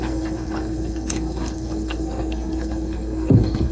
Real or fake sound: fake